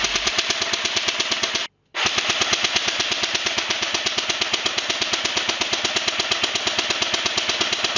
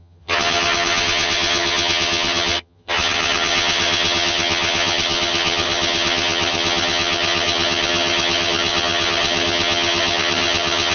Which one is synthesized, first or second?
second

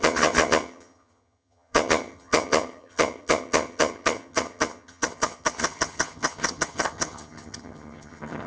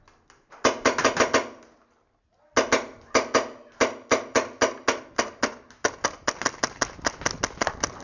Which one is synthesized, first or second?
first